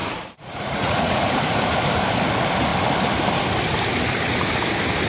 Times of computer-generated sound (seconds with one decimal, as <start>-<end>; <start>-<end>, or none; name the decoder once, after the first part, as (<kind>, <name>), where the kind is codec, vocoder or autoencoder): 0.0-1.4 (vocoder, Vocos)